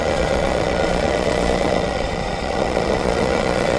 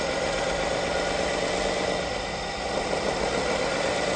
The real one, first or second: second